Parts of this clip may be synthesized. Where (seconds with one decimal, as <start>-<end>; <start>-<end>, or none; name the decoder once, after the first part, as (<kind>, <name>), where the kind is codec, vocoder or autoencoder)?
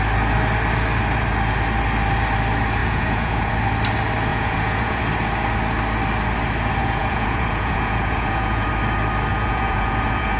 2.8-3.5 (vocoder, Vocos); 4.3-5.0; 6.8-8.7; 9.3-10.4